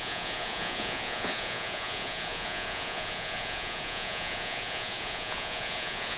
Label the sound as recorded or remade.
remade